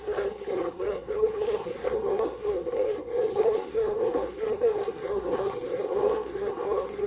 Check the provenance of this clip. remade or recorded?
remade